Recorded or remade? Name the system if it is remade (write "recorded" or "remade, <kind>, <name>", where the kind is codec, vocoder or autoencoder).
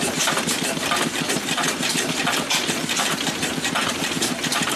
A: remade, vocoder, BigVGAN v2